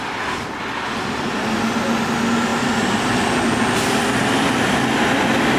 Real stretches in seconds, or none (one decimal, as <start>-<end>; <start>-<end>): 0.0-2.5; 4.4-5.6

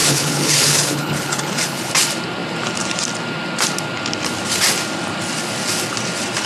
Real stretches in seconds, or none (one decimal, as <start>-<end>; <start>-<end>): 1.9-6.5

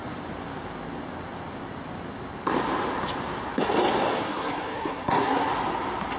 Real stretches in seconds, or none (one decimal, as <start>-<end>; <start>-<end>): 0.0-4.2; 5.5-6.2

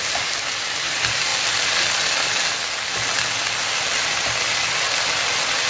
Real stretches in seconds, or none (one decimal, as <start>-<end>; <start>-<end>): 0.0-5.7

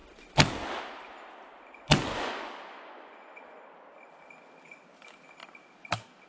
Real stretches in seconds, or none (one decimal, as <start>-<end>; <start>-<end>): 0.0-2.1; 3.6-6.3

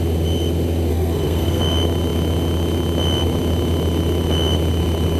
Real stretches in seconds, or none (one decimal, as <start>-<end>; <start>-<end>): 0.0-0.9; 1.6-5.2

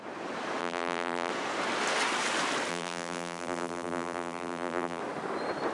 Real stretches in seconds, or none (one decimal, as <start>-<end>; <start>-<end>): 0.0-0.6; 1.3-2.7; 5.0-5.7